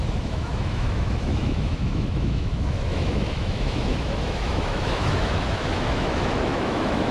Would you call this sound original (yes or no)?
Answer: no